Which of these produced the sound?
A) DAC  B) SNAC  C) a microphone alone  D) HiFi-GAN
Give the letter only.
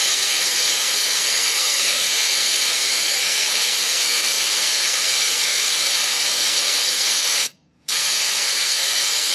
B